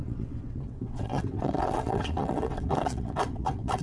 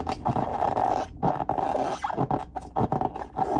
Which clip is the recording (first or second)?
second